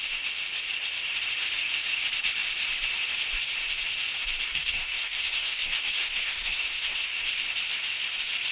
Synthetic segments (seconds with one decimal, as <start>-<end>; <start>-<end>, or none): 4.5-7.2